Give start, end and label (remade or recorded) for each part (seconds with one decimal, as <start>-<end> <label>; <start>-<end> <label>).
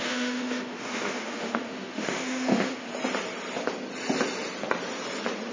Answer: 0.0-2.9 remade; 2.9-5.5 recorded